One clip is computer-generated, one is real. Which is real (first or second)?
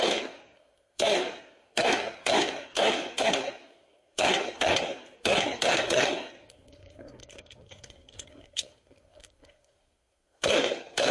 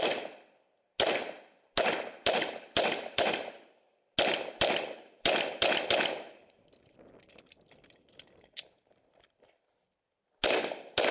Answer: second